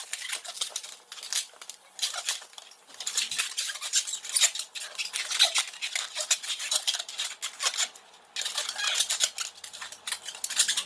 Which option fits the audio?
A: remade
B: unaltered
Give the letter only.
B